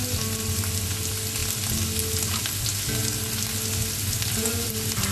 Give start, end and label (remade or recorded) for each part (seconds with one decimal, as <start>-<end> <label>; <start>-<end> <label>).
0.0-5.1 recorded